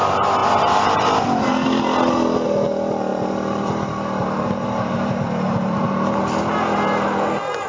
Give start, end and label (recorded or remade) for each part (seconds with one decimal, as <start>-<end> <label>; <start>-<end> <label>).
0.0-3.1 recorded; 3.1-6.4 remade; 6.4-7.7 recorded